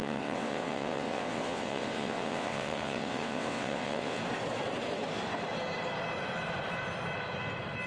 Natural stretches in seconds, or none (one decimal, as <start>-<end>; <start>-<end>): 4.2-7.9